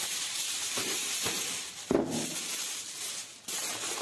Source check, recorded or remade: remade